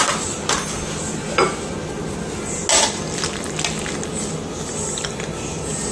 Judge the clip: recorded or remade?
recorded